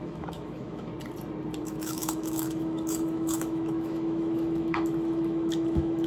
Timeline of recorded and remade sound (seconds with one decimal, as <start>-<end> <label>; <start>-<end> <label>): 0.0-0.9 remade; 0.9-1.6 recorded; 1.6-6.1 remade